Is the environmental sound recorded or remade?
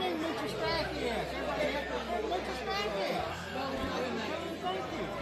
recorded